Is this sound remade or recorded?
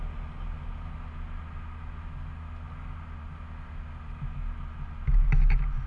recorded